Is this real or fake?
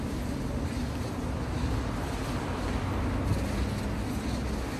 real